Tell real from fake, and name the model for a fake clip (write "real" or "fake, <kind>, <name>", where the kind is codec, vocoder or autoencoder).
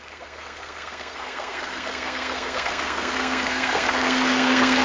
fake, codec, SNAC